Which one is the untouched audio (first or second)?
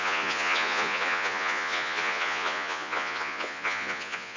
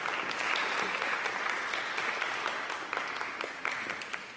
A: second